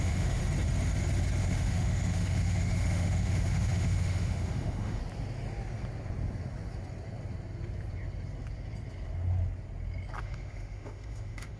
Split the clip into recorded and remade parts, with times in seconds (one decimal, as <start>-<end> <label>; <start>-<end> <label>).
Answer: 0.0-0.4 remade; 0.4-1.4 recorded; 1.4-5.0 remade; 5.0-10.2 recorded; 10.2-11.6 remade